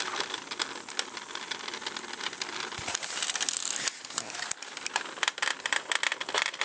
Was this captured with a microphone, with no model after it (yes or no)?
yes